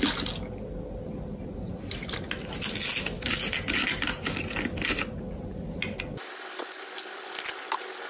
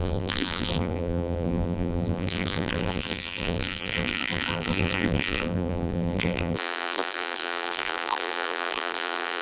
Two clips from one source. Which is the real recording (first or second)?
first